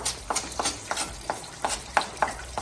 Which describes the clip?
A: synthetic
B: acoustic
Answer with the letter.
B